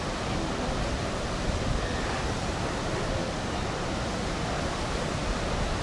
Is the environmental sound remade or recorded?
recorded